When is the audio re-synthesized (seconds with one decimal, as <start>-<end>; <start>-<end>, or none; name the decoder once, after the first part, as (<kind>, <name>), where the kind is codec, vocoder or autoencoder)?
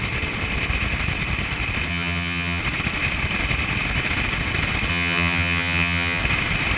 1.9-2.6 (vocoder, HiFi-GAN); 4.9-6.2